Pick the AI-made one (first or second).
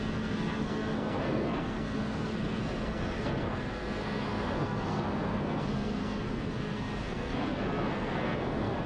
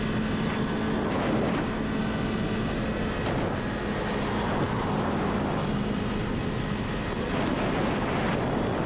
first